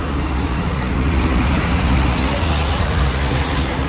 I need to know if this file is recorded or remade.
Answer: remade